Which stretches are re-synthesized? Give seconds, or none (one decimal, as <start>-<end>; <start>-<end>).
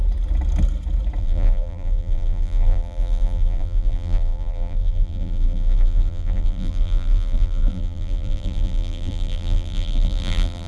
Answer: 1.2-10.7